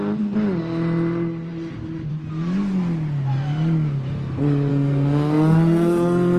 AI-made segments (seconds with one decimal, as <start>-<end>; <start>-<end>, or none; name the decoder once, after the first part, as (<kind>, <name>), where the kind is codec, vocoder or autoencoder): 4.7-6.4 (codec, SNAC)